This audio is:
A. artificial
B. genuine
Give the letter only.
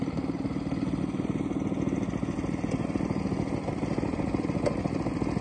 B